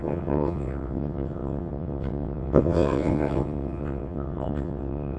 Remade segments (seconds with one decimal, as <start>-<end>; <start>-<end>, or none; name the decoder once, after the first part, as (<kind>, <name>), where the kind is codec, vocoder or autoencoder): 0.0-5.2 (vocoder, WaveNeXt)